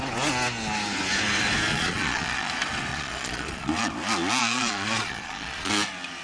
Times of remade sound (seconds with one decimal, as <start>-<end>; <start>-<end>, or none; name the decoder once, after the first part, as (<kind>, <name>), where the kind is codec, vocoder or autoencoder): 1.7-2.5 (vocoder, Vocos); 2.9-3.9; 4.4-5.7